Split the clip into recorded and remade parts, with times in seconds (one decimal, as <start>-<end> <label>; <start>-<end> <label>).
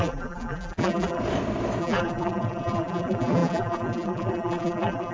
0.0-1.2 remade; 1.2-1.8 recorded; 1.8-5.1 remade